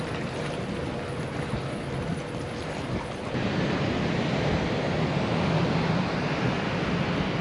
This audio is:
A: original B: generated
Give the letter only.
A